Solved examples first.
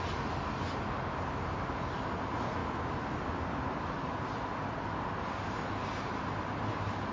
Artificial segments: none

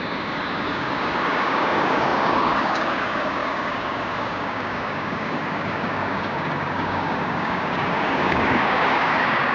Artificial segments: 0.0-9.5 (codec, DAC)